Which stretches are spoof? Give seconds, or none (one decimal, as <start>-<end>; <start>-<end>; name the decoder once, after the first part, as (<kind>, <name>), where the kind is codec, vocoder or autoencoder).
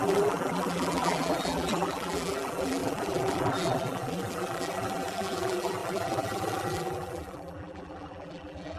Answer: 0.0-8.8 (vocoder, BigVGAN v2)